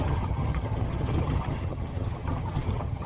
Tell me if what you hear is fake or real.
fake